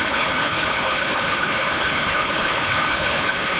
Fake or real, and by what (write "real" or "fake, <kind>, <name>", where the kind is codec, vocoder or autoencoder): fake, codec, HILCodec